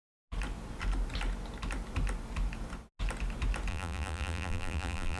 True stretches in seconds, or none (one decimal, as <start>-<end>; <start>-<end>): 0.0-3.7